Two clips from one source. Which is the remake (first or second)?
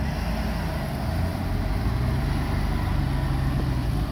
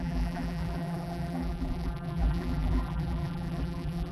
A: second